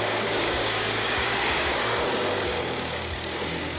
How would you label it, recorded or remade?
remade